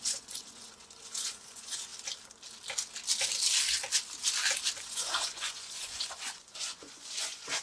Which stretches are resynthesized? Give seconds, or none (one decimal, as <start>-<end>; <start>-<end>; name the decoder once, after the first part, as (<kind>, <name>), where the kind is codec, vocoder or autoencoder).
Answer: 0.0-1.9 (vocoder, Vocos); 4.8-7.6